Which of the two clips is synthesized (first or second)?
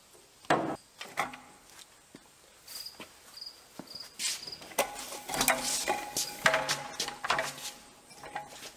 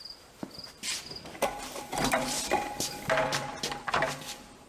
second